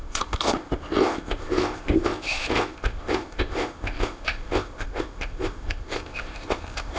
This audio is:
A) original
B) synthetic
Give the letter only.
B